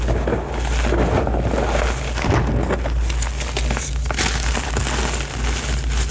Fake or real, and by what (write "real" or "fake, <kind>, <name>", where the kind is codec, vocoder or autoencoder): real